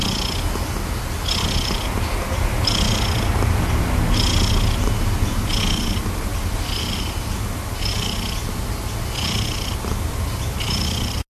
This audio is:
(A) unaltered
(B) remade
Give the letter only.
A